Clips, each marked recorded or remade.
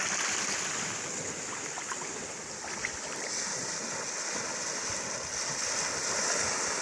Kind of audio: recorded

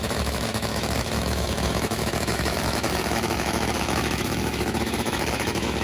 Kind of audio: remade